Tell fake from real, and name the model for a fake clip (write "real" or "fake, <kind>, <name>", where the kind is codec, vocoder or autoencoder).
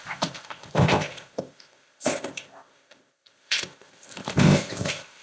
fake, codec, ZipCodec